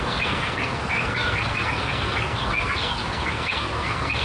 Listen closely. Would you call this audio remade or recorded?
remade